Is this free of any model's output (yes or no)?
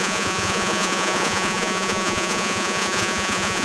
no